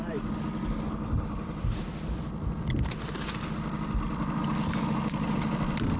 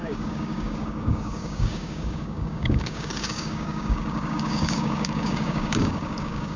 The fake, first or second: second